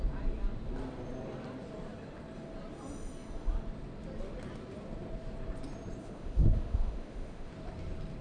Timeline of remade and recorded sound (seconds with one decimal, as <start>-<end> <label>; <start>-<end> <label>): 0.0-6.0 recorded; 6.0-7.5 remade; 7.5-8.2 recorded